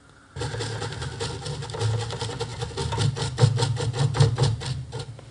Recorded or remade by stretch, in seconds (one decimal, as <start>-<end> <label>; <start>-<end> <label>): 0.0-5.3 recorded